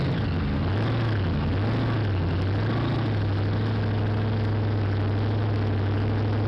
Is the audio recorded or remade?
recorded